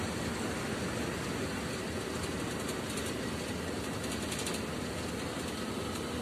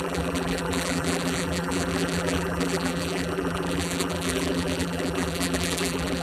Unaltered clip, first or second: first